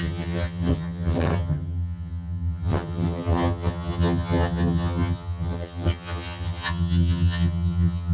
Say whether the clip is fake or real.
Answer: fake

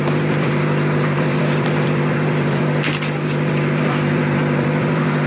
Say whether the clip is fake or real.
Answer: fake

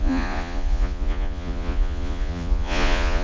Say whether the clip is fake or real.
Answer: fake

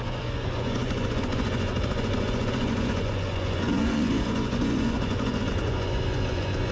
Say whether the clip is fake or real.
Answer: fake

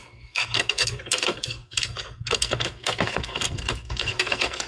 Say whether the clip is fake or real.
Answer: fake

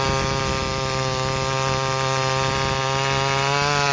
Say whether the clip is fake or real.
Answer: real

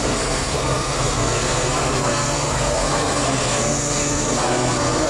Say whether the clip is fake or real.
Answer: fake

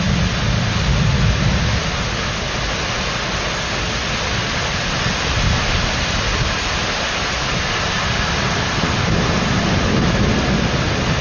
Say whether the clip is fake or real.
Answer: real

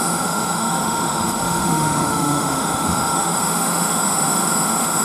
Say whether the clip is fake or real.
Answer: fake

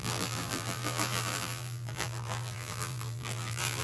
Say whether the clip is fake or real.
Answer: fake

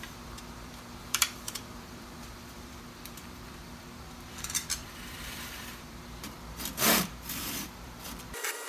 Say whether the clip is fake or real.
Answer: fake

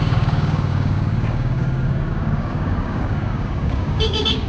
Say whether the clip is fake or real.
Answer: fake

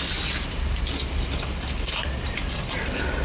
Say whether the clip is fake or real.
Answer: real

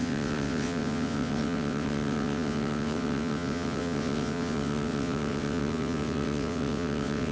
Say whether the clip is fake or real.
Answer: fake